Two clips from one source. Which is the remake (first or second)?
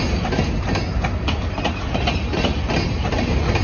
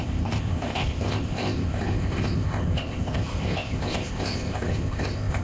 second